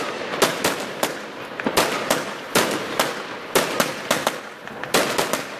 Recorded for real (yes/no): yes